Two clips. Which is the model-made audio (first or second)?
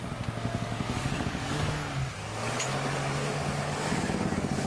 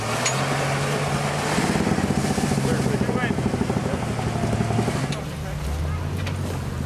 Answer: first